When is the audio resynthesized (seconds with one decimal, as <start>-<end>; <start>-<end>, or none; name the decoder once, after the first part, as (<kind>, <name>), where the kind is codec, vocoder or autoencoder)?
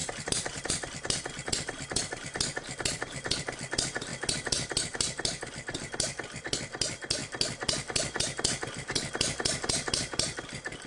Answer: 0.0-0.7 (vocoder, BigVGAN v2)